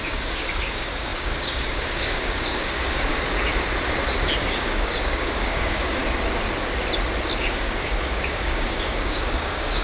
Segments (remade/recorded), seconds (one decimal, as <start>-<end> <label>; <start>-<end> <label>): 0.0-3.1 remade; 3.1-4.4 recorded; 4.4-6.0 remade; 6.0-7.4 recorded; 7.4-9.8 remade

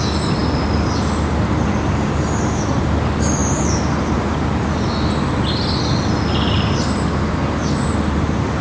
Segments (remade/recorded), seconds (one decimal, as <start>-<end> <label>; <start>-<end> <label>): 0.0-8.6 recorded

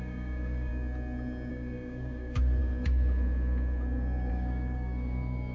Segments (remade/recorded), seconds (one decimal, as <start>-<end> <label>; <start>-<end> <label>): 0.0-0.7 remade; 0.7-1.5 recorded; 1.5-2.6 remade; 2.6-4.3 recorded; 4.3-5.5 remade

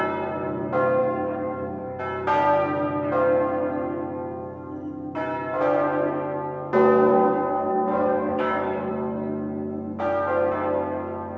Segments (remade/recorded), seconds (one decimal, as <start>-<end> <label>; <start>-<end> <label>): 0.0-1.0 recorded; 1.0-2.0 remade; 2.0-7.1 recorded; 7.1-8.9 remade; 8.9-11.4 recorded

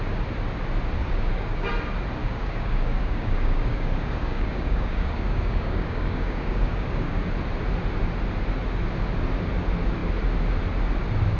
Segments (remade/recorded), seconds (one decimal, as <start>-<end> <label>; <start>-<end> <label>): 0.0-1.0 recorded; 1.0-1.7 remade; 1.7-2.2 recorded; 2.2-7.2 remade; 7.2-11.4 recorded

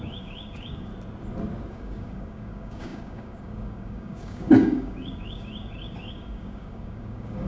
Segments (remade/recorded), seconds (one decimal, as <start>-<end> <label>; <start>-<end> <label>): 0.0-0.9 remade; 0.9-1.7 recorded; 1.7-7.5 remade

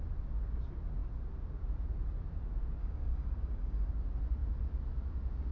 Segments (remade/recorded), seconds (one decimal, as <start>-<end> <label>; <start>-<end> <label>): 0.0-2.8 recorded; 2.8-3.9 remade; 3.9-5.5 recorded

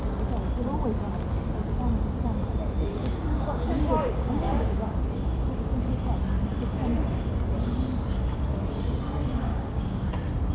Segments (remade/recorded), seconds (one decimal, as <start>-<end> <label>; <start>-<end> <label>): 0.0-2.9 recorded; 2.9-4.9 remade; 4.9-9.5 recorded; 9.5-10.1 remade; 10.1-10.5 recorded